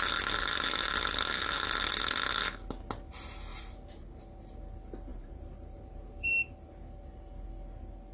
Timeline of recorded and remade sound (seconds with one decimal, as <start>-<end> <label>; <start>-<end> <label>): 0.0-3.5 recorded; 3.5-4.2 remade; 4.2-5.1 recorded; 5.1-6.3 remade; 6.3-8.1 recorded